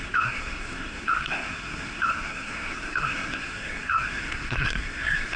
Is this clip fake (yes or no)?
yes